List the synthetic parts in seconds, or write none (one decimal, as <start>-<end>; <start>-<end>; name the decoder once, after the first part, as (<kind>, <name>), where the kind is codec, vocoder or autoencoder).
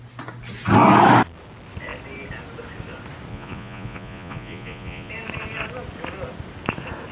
3.3-5.1 (vocoder, Vocos)